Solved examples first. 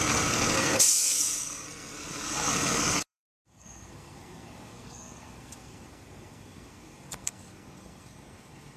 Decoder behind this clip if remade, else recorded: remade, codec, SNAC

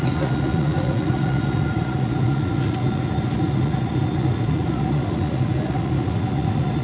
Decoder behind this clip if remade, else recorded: remade, vocoder, Vocos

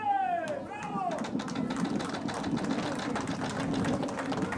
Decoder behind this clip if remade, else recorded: recorded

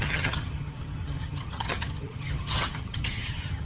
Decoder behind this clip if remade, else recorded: remade, vocoder, HiFi-GAN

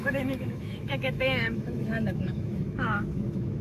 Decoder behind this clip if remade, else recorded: remade, autoencoder, DAC-VAE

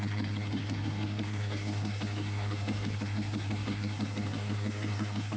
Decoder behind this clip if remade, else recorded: remade, codec, SNAC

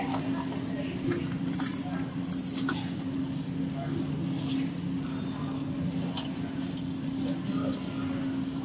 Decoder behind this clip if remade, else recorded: recorded